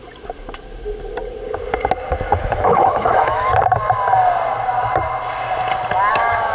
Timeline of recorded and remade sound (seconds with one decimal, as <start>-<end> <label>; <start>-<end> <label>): 0.0-2.4 recorded; 2.4-3.5 remade; 3.5-6.1 recorded; 6.1-6.5 remade